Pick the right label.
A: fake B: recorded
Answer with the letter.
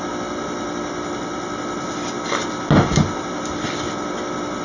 B